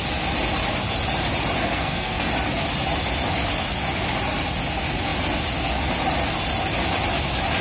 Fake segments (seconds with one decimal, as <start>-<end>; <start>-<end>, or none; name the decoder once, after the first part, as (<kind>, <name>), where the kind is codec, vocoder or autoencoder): 1.6-2.3 (codec, SNAC)